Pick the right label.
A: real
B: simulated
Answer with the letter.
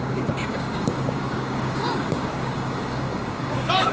B